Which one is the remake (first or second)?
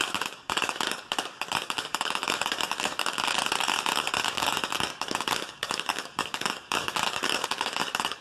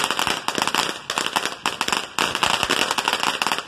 first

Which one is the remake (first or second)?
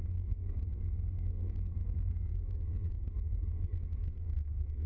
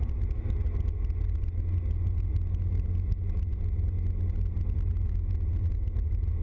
first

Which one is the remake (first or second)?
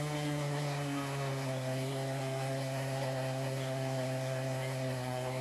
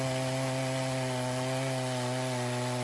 first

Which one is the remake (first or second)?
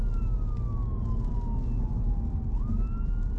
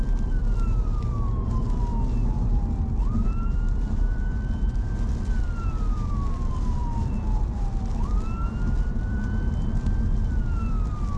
second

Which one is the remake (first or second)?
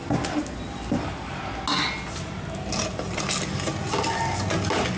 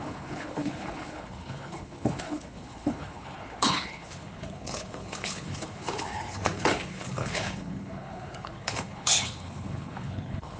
second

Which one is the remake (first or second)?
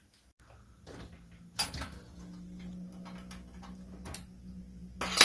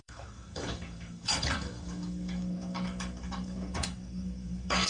second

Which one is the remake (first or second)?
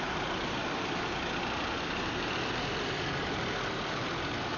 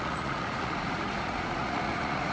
second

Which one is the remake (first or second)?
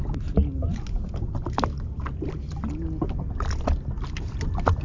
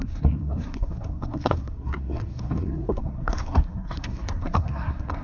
second